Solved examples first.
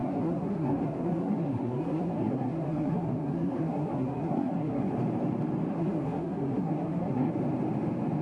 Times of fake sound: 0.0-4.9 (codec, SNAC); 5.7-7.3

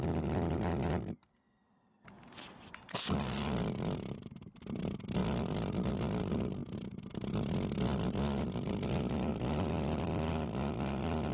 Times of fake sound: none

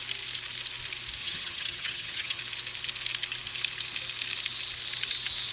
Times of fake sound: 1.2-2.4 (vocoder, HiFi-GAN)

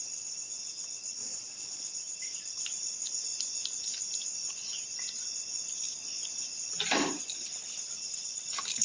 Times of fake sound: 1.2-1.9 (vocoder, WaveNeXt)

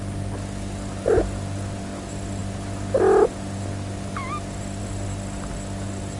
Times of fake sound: none